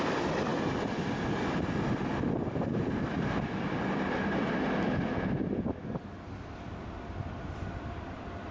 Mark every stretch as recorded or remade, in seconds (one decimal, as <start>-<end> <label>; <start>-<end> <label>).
0.0-0.5 remade; 0.5-4.1 recorded; 4.1-8.5 remade